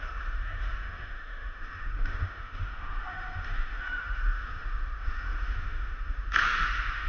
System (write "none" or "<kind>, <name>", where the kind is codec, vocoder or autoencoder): autoencoder, DAC-VAE